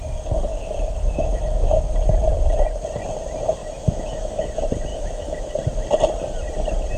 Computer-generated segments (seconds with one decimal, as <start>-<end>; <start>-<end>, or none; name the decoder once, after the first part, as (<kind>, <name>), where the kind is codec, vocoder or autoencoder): 0.5-1.8 (autoencoder, DAC-VAE); 3.6-4.5; 4.9-5.5